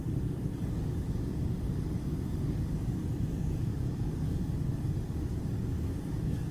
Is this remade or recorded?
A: remade